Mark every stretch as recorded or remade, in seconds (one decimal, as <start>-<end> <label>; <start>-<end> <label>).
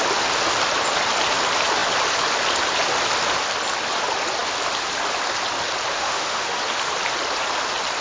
0.0-5.9 recorded; 5.9-6.6 remade; 6.6-8.0 recorded